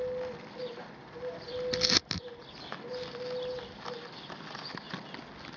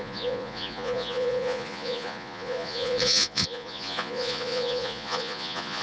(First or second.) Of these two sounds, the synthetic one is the second